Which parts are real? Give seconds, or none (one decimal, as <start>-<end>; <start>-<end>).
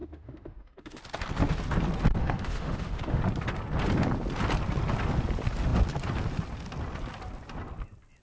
1.0-2.2; 3.2-8.2